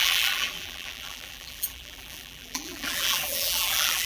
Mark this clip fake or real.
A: fake